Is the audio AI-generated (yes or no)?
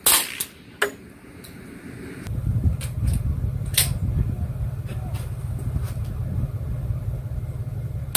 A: no